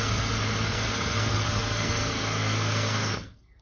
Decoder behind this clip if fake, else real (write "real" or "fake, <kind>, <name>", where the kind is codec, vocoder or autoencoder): fake, codec, SNAC